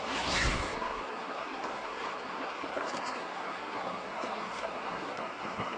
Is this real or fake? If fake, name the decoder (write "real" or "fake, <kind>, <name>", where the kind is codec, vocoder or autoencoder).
fake, codec, SNAC